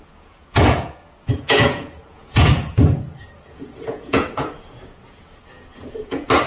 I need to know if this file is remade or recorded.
remade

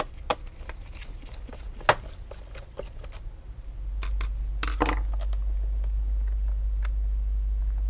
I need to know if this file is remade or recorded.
recorded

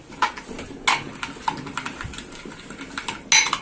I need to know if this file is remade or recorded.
recorded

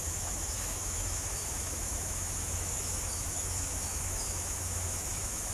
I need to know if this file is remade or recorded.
remade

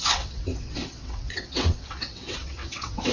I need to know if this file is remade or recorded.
remade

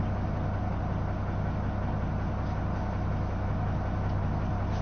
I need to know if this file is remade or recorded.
recorded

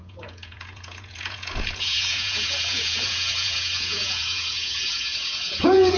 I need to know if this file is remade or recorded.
remade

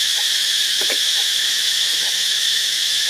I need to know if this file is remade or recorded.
remade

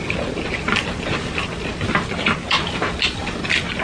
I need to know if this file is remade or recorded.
recorded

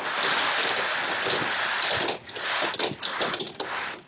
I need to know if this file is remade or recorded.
recorded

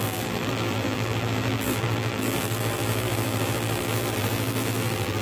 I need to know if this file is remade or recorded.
remade